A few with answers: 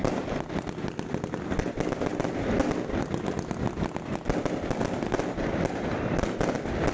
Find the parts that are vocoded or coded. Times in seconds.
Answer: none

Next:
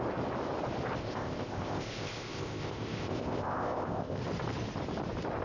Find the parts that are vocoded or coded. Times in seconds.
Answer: 1.0-4.2 (codec, ZipCodec)

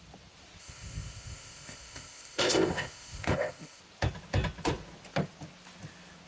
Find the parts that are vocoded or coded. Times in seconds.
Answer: 0.6-3.8 (codec, ZipCodec)